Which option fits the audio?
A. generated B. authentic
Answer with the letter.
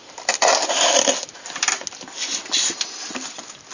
B